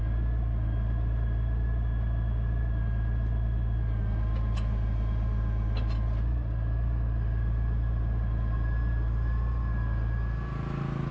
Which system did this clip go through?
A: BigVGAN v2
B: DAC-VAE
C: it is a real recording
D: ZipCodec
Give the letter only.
C